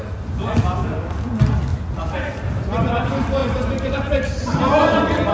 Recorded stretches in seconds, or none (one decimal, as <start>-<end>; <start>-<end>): 0.0-5.3